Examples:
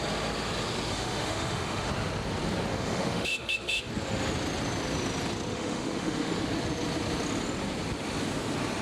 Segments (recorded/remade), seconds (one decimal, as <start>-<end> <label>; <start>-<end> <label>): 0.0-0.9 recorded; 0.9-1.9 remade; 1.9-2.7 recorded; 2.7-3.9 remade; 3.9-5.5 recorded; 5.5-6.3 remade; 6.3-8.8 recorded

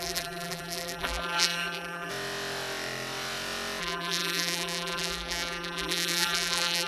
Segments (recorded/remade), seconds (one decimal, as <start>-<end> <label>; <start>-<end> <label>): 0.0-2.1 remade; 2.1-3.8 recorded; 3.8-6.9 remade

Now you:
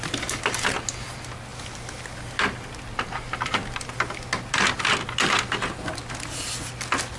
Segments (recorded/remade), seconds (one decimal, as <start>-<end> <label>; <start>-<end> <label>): 0.0-7.2 recorded